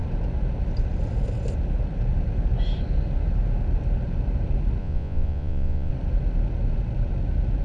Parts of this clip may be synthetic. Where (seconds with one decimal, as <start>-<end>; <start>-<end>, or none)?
4.8-5.9